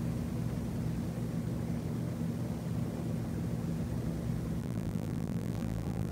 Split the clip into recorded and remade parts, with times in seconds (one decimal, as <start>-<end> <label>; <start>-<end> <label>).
0.0-4.6 recorded; 4.6-6.1 remade